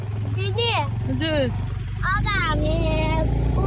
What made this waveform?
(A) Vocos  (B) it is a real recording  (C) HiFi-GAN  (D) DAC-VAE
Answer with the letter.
B